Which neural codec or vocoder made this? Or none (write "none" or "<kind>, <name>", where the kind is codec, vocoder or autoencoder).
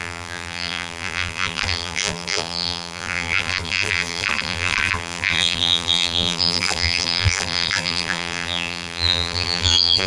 vocoder, BigVGAN v2